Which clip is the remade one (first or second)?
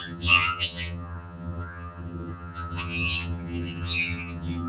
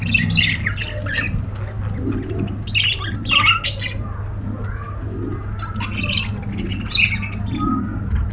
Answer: first